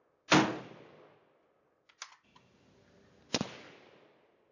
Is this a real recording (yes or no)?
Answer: yes